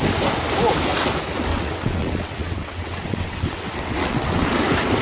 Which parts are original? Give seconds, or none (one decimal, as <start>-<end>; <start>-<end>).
0.0-1.5; 4.5-5.0